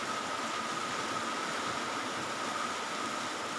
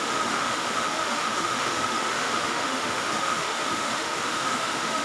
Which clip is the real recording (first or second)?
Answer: first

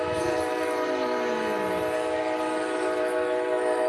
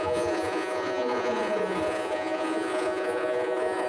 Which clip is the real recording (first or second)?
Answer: first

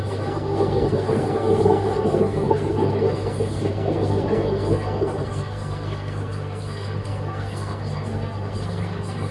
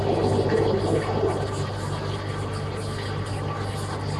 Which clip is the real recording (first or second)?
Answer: second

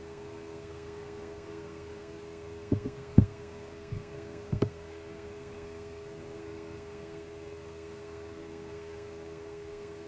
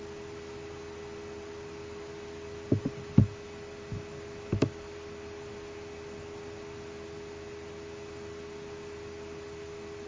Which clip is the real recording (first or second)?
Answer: second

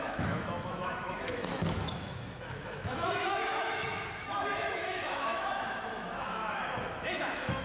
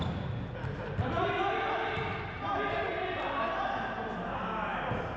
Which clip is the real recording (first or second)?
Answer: second